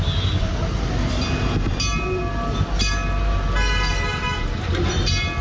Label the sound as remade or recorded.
recorded